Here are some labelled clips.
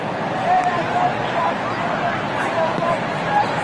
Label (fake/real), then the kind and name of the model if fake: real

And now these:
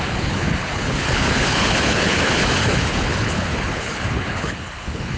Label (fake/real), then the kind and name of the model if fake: fake, codec, HILCodec